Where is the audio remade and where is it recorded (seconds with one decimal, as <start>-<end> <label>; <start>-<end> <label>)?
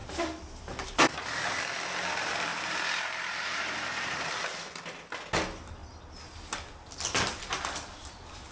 0.0-2.5 recorded; 2.5-4.3 remade; 4.3-8.5 recorded